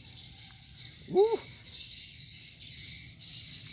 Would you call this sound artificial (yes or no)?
no